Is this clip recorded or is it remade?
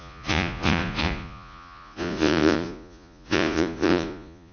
remade